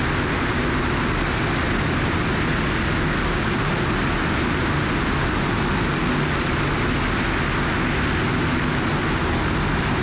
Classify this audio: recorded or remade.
recorded